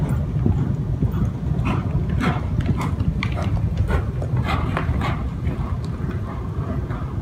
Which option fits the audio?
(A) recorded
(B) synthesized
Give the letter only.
A